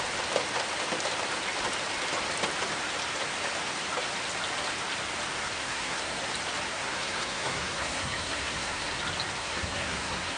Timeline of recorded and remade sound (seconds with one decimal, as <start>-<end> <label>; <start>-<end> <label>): 0.0-5.6 recorded; 5.6-6.2 remade; 6.2-6.7 recorded; 6.7-9.0 remade; 9.0-9.4 recorded; 9.4-10.4 remade